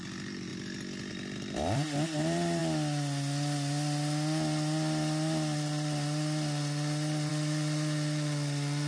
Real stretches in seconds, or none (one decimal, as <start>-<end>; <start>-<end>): 0.5-1.1; 2.6-7.3